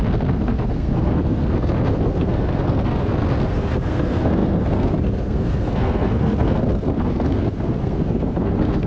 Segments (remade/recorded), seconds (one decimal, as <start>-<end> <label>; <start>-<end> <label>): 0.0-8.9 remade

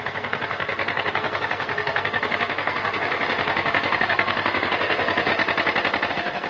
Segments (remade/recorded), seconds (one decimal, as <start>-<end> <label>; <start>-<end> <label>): 0.0-5.3 remade; 5.3-6.1 recorded; 6.1-6.5 remade

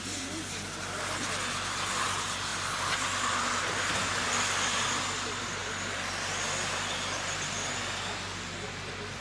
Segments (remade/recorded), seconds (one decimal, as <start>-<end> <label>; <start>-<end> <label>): 0.0-9.2 recorded

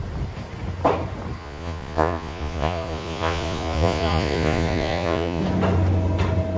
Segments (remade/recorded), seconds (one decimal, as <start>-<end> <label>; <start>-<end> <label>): 0.0-1.4 recorded; 1.4-5.4 remade; 5.4-6.6 recorded

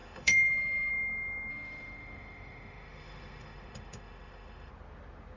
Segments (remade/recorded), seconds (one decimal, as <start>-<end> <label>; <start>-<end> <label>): 0.0-0.9 remade; 0.9-1.5 recorded; 1.5-4.7 remade; 4.7-5.4 recorded

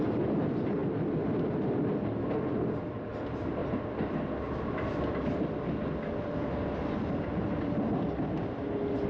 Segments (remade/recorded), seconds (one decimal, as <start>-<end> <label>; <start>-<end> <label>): 0.0-9.1 recorded

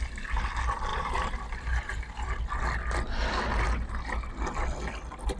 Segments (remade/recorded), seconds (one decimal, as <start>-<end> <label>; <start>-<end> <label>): 0.0-0.9 recorded; 0.9-2.1 remade; 2.1-5.4 recorded

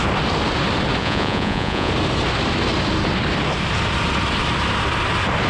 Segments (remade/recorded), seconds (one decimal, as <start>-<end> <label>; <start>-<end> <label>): 0.0-1.0 recorded; 1.0-1.9 remade; 1.9-5.5 recorded